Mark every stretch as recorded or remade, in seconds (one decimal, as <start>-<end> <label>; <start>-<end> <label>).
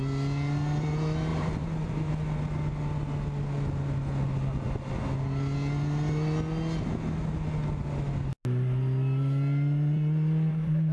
0.0-1.3 recorded; 1.3-2.1 remade; 2.1-10.9 recorded